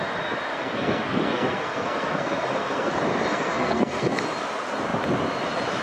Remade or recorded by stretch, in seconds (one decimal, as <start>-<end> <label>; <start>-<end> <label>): 0.0-0.5 recorded; 0.5-2.9 remade; 2.9-3.3 recorded; 3.3-4.2 remade; 4.2-5.8 recorded